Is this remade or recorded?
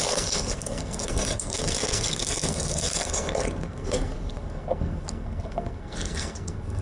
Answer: remade